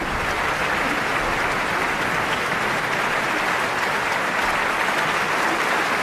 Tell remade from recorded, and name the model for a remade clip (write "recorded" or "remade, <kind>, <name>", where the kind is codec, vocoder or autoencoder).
recorded